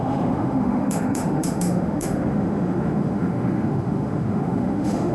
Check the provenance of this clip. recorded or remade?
remade